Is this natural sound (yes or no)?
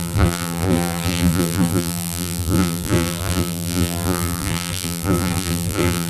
no